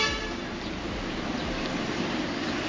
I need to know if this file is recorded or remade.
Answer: recorded